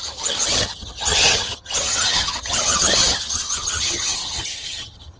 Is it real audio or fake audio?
fake